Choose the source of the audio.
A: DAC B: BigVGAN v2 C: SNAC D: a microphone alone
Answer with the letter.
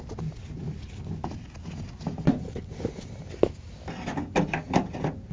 D